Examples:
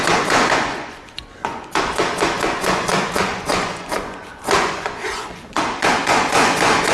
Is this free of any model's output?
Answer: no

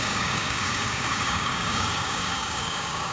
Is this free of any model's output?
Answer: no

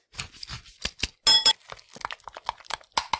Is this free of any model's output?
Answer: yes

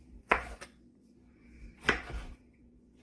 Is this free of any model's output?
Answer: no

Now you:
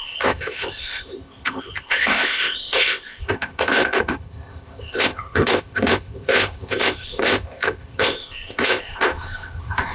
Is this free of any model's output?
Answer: no